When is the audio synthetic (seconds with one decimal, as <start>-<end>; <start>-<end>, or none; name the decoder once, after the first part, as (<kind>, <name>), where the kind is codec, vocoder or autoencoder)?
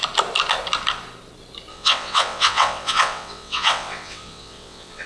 1.7-5.1 (vocoder, WaveNeXt)